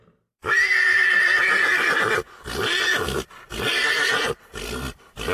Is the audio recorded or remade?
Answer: recorded